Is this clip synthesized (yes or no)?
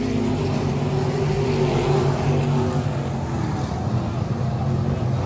no